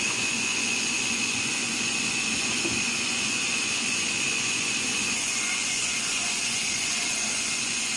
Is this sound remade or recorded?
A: remade